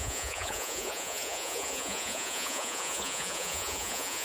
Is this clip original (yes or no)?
no